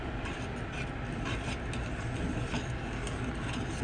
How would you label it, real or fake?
real